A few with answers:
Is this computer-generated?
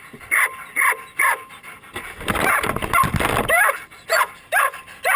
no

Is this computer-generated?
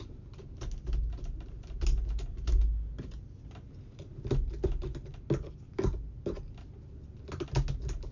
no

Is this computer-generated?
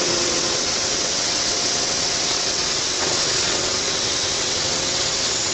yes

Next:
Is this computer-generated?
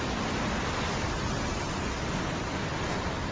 no